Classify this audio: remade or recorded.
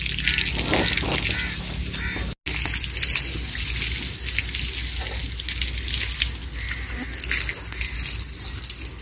recorded